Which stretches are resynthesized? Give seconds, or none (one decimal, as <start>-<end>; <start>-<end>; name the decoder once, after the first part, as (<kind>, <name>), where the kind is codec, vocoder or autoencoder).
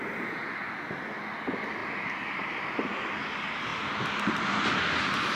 1.8-2.9 (vocoder, BigVGAN v2)